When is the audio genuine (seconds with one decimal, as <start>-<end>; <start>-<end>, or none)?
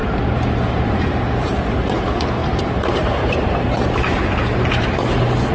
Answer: 1.5-2.4